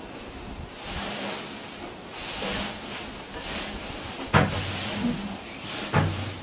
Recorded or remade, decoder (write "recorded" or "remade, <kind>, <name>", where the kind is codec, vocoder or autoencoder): recorded